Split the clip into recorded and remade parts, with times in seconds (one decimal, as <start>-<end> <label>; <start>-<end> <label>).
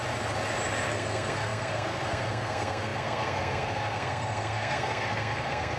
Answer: 0.0-0.9 recorded; 0.9-5.8 remade